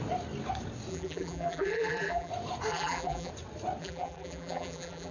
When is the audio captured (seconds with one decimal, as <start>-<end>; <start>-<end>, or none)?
0.0-0.9; 2.3-2.7; 3.3-3.8